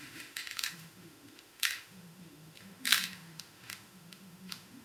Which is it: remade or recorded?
remade